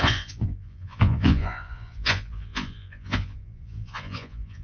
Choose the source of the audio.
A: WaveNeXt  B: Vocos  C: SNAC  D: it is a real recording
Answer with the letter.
B